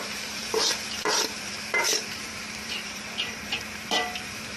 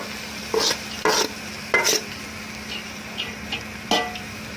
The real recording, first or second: second